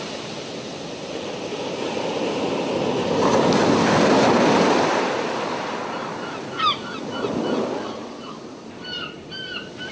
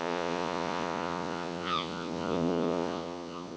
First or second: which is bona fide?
first